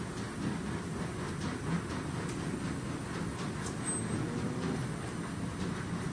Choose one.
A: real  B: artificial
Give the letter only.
A